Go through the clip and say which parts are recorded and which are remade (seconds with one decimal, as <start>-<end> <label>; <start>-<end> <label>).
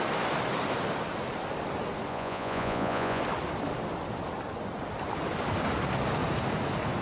0.0-2.1 recorded; 2.1-3.2 remade; 3.2-7.0 recorded